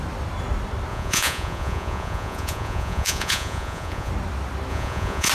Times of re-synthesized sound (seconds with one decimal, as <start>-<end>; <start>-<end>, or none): 0.9-4.1; 4.7-5.3

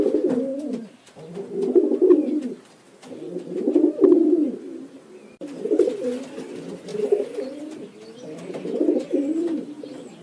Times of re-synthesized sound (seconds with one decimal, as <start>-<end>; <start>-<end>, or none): 0.5-1.3

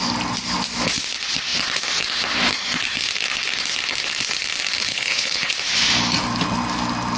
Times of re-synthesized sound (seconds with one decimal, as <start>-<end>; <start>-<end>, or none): 4.9-5.5

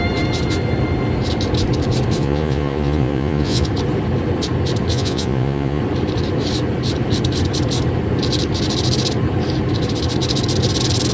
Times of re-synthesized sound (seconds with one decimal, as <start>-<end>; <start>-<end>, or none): 2.2-3.7; 4.9-5.8

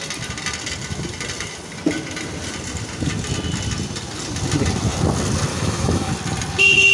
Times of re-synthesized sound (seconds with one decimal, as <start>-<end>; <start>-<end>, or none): 5.5-6.1

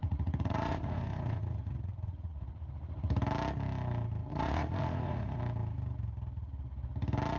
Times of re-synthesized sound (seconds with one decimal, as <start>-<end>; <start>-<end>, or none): 0.0-3.1; 4.3-5.4